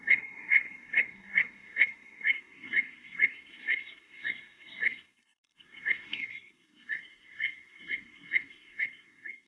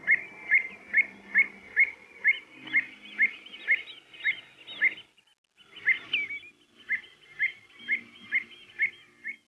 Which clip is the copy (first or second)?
first